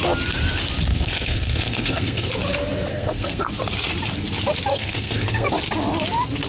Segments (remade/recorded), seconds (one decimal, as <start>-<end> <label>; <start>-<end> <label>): 0.0-0.9 recorded; 0.9-2.3 remade; 2.3-2.9 recorded; 2.9-3.5 remade; 3.5-4.7 recorded; 4.7-5.5 remade; 5.5-6.5 recorded